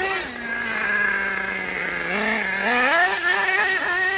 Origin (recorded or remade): recorded